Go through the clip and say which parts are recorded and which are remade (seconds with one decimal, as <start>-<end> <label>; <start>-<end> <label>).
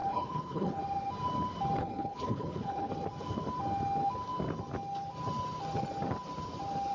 0.0-0.8 remade; 0.8-1.8 recorded; 1.8-2.9 remade; 2.9-6.9 recorded